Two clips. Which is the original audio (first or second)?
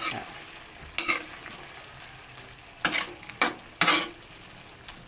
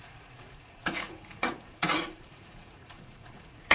first